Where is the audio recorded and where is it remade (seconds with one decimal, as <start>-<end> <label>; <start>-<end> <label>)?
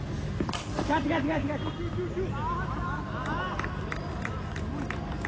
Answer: 0.0-5.3 recorded